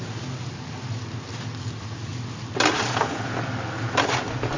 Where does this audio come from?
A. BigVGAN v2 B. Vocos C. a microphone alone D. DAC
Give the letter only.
C